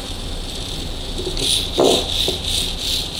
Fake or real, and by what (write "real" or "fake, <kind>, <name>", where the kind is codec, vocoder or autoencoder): real